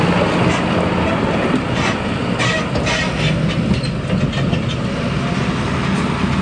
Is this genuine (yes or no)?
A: yes